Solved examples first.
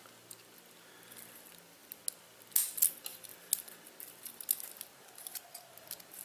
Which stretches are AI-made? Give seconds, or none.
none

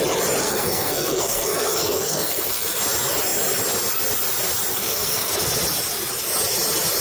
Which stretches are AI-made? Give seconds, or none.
0.4-2.8 (codec, SNAC); 4.7-5.3